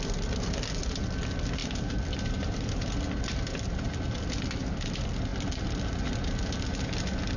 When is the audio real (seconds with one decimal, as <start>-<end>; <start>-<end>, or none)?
0.0-7.4